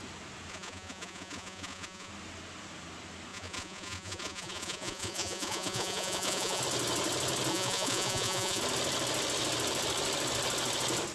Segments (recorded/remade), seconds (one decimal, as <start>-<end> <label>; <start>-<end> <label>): 0.0-0.5 recorded; 0.5-2.1 remade; 2.1-3.3 recorded; 3.3-6.6 remade; 6.6-7.5 recorded; 7.5-8.6 remade; 8.6-11.1 recorded